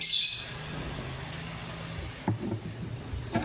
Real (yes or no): yes